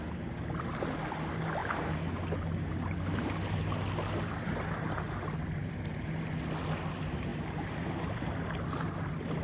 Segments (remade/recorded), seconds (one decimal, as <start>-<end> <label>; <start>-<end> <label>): 0.0-9.4 recorded